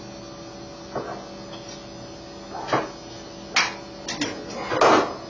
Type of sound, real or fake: real